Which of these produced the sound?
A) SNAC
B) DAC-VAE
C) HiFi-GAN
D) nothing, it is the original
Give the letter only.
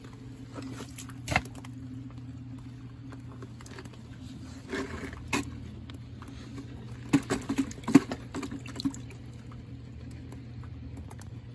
D